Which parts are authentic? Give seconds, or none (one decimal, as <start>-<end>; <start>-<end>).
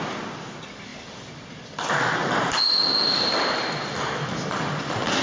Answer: 0.0-5.2